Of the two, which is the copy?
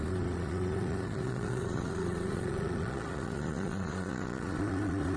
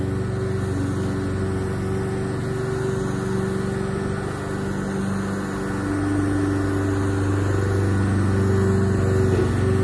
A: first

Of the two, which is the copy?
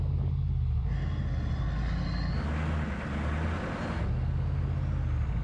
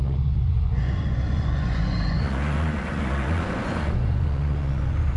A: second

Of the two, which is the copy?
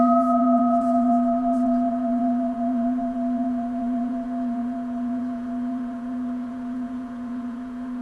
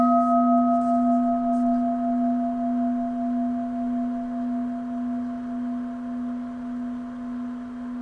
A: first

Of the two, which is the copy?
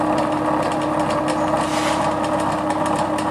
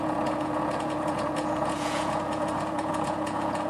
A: second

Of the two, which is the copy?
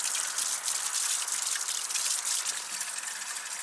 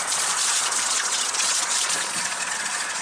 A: second